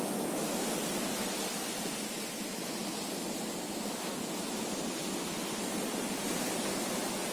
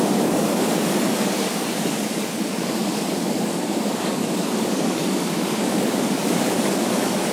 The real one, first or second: first